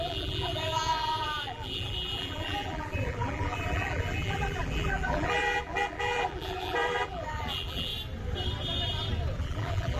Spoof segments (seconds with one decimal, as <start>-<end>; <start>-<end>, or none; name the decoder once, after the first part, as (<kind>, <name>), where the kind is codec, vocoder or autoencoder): 0.0-7.9 (vocoder, BigVGAN v2); 9.4-10.0